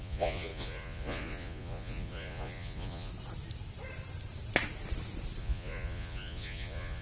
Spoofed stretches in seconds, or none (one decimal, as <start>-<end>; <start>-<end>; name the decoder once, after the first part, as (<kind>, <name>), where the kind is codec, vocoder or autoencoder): 0.0-3.1 (vocoder, Vocos); 5.4-7.0